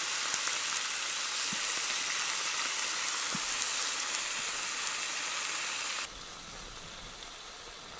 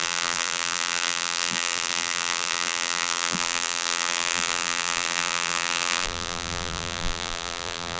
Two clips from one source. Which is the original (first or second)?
first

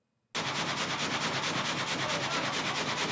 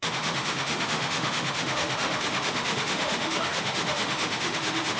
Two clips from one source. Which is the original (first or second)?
first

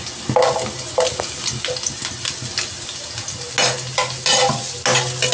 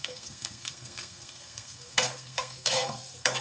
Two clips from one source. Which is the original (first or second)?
first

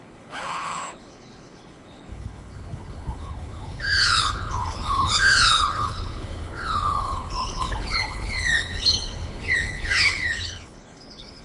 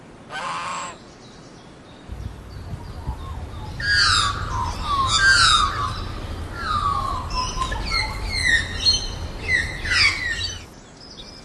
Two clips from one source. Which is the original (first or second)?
second